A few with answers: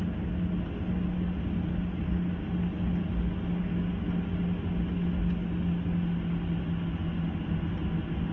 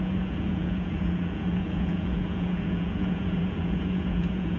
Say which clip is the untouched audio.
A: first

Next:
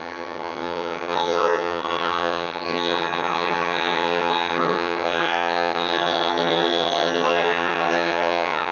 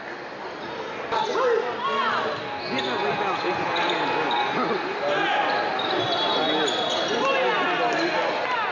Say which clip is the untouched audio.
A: second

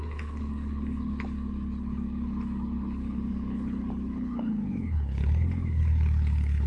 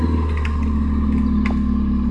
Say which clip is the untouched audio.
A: second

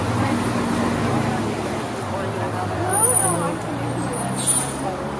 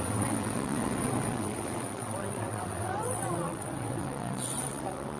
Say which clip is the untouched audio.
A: first